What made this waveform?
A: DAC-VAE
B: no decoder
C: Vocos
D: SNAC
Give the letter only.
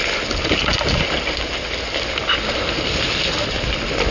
B